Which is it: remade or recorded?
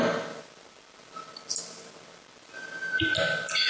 recorded